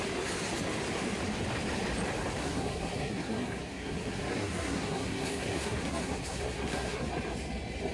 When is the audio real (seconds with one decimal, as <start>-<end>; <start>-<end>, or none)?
0.0-2.4; 7.1-7.9